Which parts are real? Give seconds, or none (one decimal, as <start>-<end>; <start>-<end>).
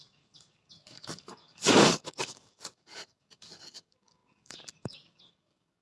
none